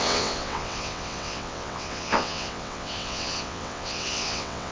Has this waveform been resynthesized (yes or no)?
yes